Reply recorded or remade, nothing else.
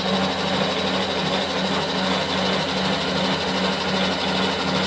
recorded